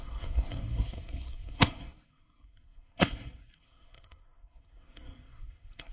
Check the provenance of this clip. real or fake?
fake